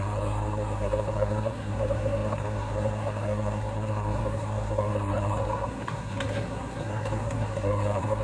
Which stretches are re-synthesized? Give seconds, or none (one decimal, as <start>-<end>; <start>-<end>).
0.0-8.2

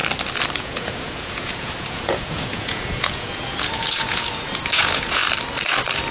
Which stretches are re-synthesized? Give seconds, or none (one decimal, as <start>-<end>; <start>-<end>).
0.6-5.2

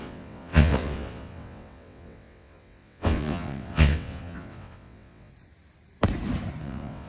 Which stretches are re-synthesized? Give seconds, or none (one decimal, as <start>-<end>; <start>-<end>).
0.0-5.3; 6.6-7.1

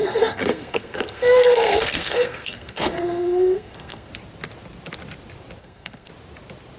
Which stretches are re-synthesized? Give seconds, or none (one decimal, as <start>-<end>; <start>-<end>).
0.0-4.1; 5.6-6.1

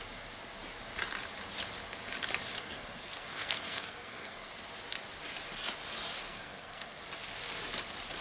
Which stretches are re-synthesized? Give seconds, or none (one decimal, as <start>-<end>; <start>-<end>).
2.6-4.5; 6.2-7.0